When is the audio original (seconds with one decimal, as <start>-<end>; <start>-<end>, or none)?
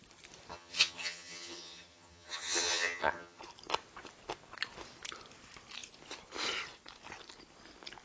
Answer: 0.0-0.5; 3.4-8.0